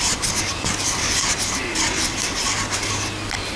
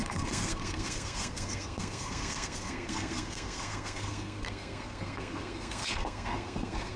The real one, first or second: first